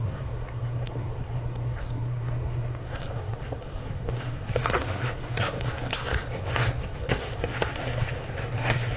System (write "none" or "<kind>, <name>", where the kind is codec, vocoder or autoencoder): codec, SNAC